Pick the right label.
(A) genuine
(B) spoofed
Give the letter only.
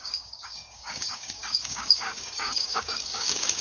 B